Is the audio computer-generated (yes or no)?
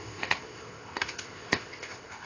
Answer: yes